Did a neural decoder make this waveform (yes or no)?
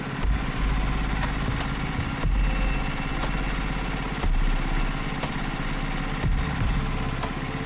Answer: no